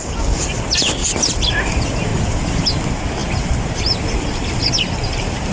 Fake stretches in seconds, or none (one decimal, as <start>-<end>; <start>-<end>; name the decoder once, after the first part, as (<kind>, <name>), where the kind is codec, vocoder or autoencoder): none